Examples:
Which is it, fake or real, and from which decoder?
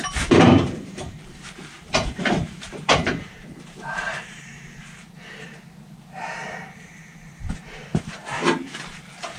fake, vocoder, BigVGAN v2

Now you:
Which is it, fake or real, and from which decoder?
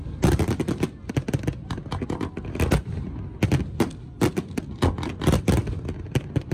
real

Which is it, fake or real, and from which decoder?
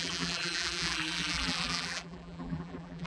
fake, vocoder, BigVGAN v2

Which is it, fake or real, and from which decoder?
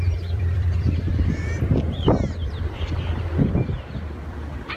fake, vocoder, BigVGAN v2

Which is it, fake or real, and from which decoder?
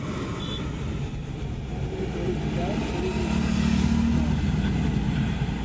real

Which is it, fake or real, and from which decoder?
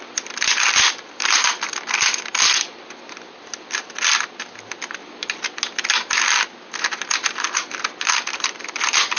real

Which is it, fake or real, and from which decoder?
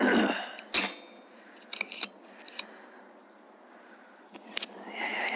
real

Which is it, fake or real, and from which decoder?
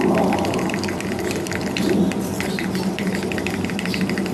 real